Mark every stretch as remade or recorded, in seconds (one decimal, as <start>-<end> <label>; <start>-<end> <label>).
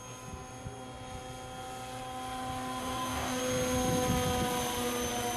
0.0-2.8 recorded; 2.8-3.4 remade; 3.4-5.4 recorded